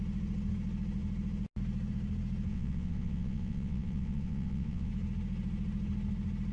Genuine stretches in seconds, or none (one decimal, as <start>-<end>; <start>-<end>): 0.0-2.5; 4.9-6.5